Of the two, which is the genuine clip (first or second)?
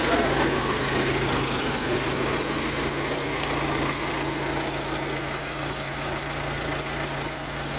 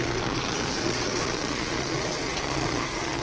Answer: first